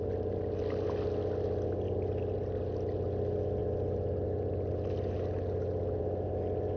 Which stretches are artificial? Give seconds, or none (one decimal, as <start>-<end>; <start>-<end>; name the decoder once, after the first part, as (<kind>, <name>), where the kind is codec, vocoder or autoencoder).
none